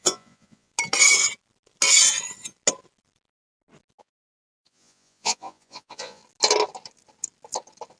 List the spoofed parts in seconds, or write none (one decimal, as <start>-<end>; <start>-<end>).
0.0-0.7; 4.0-6.2

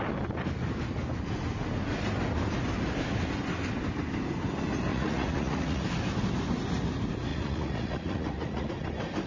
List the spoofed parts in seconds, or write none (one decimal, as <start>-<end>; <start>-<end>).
4.9-5.8; 7.3-8.7